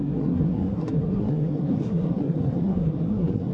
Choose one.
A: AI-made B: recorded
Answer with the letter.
A